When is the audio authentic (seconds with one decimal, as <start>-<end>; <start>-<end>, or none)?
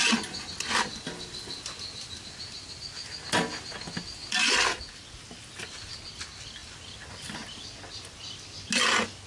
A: 0.0-9.3